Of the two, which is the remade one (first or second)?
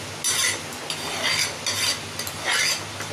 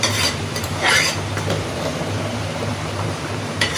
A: second